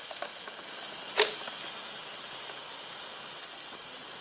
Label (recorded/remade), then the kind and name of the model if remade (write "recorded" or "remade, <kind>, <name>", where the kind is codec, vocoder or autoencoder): recorded